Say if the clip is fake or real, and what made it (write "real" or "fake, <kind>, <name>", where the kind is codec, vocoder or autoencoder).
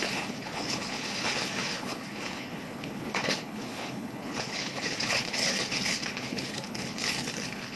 fake, codec, HILCodec